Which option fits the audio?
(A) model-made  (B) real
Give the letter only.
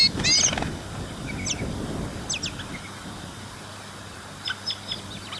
B